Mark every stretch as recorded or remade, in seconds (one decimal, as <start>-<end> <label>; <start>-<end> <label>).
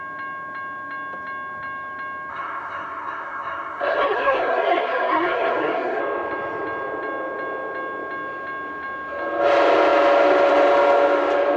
0.0-2.3 recorded; 2.3-6.0 remade; 6.0-11.6 recorded